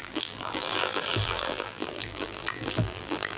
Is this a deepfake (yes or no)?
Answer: yes